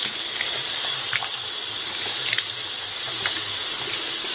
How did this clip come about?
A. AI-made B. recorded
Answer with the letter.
A